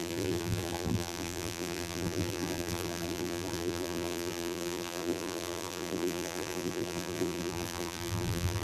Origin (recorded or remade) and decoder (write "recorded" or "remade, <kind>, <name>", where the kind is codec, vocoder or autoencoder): remade, vocoder, BigVGAN v2